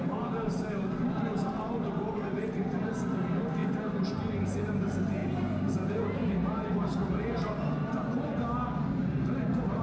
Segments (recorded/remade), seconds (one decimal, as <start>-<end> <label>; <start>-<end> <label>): 0.0-9.8 recorded